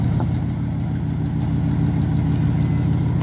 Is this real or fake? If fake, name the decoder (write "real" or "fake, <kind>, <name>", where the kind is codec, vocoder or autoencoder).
real